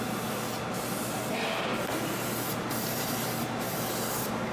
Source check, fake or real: real